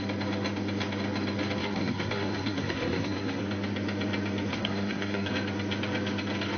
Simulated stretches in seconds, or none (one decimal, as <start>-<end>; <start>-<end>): 1.6-3.4; 4.5-5.3